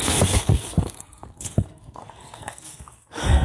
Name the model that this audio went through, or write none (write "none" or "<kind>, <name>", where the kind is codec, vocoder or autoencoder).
codec, SNAC